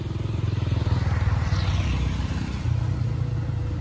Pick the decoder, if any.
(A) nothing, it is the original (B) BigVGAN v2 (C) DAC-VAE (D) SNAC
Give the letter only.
A